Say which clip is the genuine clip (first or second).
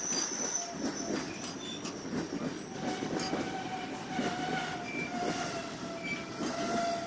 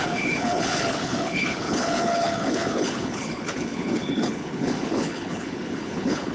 first